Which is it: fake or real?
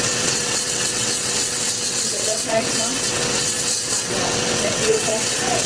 fake